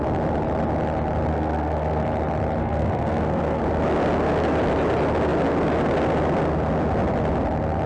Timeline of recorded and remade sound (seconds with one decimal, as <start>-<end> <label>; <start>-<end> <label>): 0.0-1.3 recorded; 1.3-2.0 remade; 2.0-2.6 recorded; 2.6-3.6 remade; 3.6-7.9 recorded